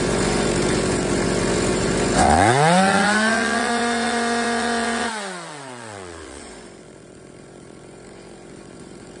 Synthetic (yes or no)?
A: yes